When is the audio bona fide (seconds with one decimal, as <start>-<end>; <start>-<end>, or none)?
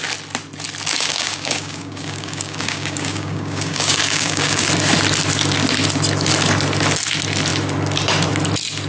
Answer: 0.0-0.9; 4.7-8.9